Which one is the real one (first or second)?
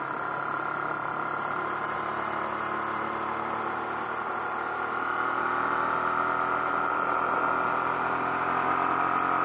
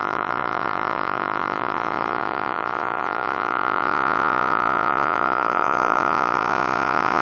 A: first